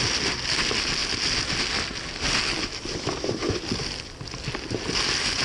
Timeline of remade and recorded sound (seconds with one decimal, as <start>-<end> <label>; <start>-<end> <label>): 0.0-5.4 recorded